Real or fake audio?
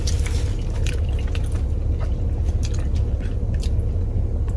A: real